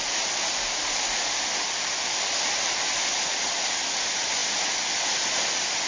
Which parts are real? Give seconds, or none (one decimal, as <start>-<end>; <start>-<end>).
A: 0.0-5.9